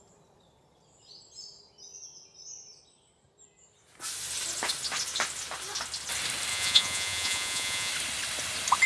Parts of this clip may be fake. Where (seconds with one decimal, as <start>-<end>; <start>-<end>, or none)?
6.5-7.9